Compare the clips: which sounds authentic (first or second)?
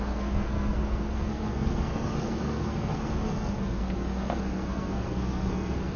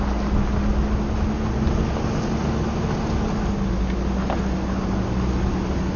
second